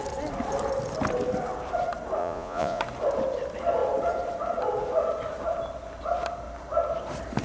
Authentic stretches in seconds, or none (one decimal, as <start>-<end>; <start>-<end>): 0.0-2.2; 2.8-7.4